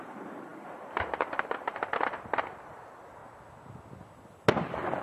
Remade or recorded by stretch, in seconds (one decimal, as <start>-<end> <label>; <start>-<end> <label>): 0.0-3.2 remade; 3.2-4.5 recorded; 4.5-5.0 remade

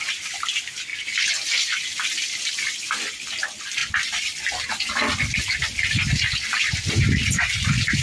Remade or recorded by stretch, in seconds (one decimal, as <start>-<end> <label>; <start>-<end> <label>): 0.0-8.0 recorded

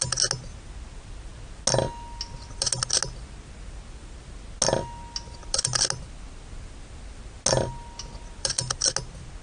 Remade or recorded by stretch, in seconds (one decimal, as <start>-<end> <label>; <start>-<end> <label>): 0.0-9.4 recorded

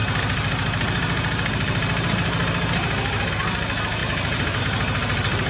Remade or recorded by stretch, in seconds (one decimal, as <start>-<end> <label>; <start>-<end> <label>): 0.0-3.3 remade; 3.3-4.0 recorded; 4.0-4.6 remade; 4.6-5.5 recorded

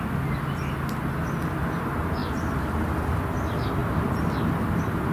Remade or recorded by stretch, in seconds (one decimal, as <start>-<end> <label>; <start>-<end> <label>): 0.0-2.2 recorded; 2.2-3.2 remade; 3.2-3.8 recorded; 3.8-5.1 remade

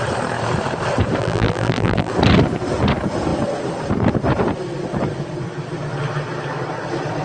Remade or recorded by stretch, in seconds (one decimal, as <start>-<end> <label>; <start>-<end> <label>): 0.0-1.2 recorded; 1.2-2.1 remade; 2.1-7.2 recorded

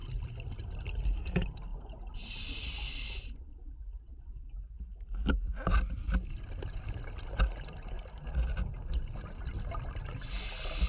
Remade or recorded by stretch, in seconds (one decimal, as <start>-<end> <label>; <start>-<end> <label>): 0.0-0.6 remade; 0.6-10.9 recorded